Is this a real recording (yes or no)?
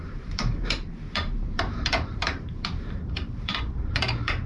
no